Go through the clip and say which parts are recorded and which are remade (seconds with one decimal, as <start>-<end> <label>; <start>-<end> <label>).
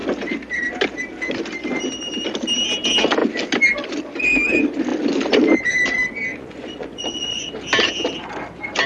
0.0-6.3 recorded; 6.3-7.5 remade; 7.5-8.9 recorded